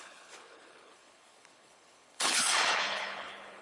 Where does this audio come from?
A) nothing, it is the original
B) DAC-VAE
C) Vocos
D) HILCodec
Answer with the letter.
D